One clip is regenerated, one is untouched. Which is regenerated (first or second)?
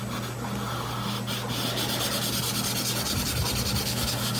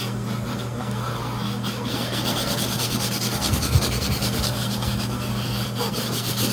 second